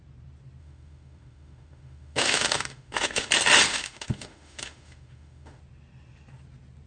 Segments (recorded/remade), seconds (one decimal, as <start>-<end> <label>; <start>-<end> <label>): 0.0-0.6 recorded; 0.6-3.3 remade; 3.3-3.7 recorded; 3.7-5.6 remade; 5.6-6.9 recorded